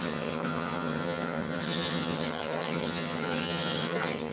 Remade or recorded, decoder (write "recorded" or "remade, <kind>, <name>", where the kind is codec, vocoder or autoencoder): remade, vocoder, HiFi-GAN